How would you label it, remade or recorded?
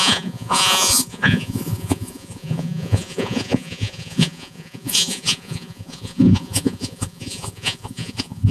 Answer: remade